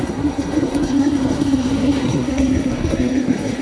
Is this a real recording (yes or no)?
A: no